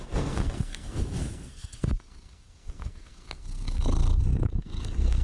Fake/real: fake